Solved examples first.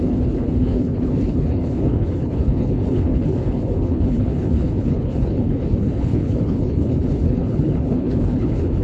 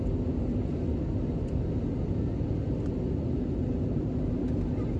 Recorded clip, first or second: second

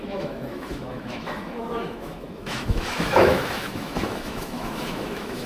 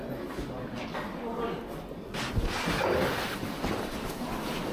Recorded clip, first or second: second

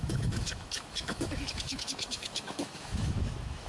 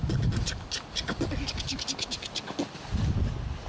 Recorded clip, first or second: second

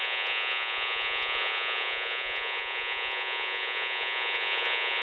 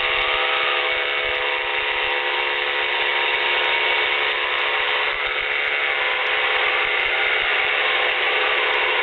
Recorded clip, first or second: second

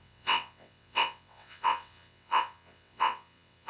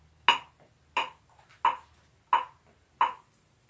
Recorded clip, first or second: second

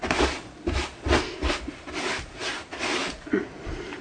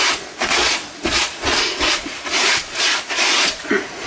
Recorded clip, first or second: first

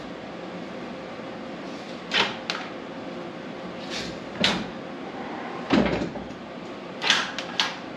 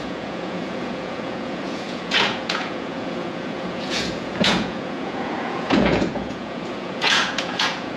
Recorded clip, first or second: first